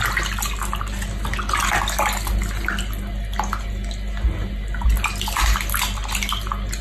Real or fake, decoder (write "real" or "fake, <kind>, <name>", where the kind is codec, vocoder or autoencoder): real